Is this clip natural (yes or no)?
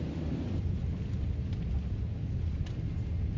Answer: yes